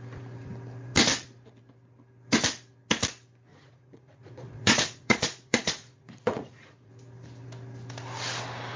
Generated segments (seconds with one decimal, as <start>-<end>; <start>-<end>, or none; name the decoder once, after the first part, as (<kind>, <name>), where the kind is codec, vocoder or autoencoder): 3.5-6.9 (vocoder, Vocos)

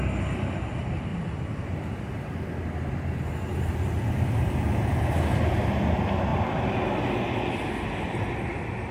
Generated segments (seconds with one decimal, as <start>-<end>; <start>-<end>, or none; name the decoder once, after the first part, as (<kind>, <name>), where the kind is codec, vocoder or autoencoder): none

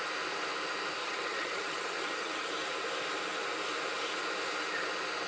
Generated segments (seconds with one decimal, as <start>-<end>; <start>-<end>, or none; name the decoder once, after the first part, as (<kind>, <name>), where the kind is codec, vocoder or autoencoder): 1.0-2.5 (vocoder, HiFi-GAN)

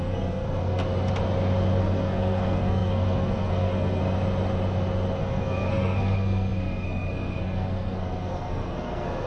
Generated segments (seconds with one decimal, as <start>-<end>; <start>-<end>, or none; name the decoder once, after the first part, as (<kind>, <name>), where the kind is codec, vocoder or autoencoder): 0.0-0.8 (codec, SNAC); 1.8-4.0; 5.2-9.3